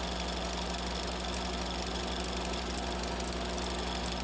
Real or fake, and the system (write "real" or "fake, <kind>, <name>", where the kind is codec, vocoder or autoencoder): real